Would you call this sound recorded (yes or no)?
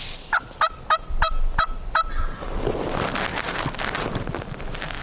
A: yes